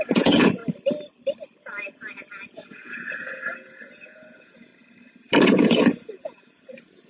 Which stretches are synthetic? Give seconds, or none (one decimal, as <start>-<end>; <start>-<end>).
0.0-0.6; 1.9-4.7; 5.4-7.1